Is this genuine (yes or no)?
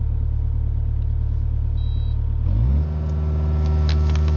yes